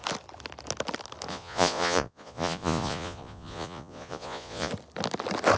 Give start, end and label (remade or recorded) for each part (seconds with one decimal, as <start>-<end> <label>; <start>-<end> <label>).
0.0-1.3 recorded; 1.3-4.7 remade; 4.7-5.6 recorded